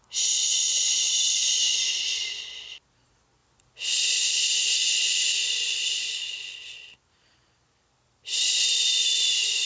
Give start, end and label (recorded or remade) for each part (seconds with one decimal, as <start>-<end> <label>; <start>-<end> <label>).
0.0-9.7 recorded